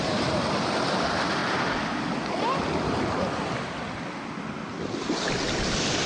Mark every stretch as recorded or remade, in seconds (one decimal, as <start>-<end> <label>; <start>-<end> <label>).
0.0-6.1 recorded